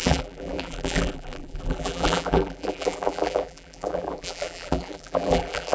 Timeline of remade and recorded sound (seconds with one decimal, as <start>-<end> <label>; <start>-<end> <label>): 0.0-5.7 remade